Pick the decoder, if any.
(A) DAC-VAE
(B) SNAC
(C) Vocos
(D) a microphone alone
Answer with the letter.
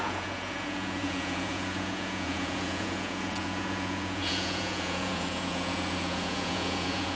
C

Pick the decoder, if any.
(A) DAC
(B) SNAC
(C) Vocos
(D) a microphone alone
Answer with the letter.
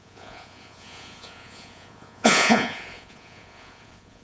C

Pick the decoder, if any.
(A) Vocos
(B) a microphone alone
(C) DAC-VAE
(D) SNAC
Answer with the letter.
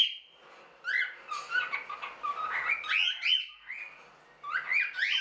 B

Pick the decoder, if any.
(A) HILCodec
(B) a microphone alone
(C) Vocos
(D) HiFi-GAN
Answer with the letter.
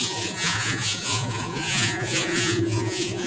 C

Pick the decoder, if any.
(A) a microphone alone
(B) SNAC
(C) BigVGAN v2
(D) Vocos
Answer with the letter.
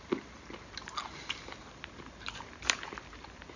A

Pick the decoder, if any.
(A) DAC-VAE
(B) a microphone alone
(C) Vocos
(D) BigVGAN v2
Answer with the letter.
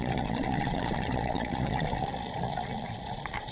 C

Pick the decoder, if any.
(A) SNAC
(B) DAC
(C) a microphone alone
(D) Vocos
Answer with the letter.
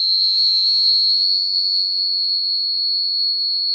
D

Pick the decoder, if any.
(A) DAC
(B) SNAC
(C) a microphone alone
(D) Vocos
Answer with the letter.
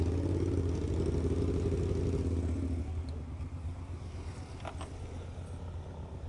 C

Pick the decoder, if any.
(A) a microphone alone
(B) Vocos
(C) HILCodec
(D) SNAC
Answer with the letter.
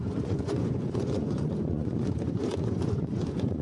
B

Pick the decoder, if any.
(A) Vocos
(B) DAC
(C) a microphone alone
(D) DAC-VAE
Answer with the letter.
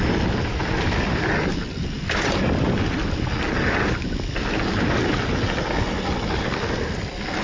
C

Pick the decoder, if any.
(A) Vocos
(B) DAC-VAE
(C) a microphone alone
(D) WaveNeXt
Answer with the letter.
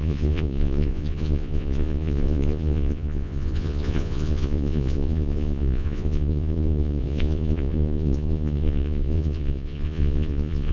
A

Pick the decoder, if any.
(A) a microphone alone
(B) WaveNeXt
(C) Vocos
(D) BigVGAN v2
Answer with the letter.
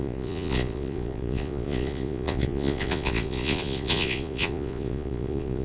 C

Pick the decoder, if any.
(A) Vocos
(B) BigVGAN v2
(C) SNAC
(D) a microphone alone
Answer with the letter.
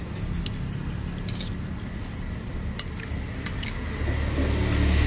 D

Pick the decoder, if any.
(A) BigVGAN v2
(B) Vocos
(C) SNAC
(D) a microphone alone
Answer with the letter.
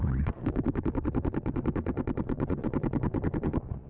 B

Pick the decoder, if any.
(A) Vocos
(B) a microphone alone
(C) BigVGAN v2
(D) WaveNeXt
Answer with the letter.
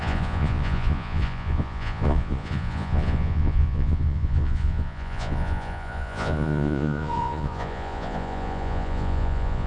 A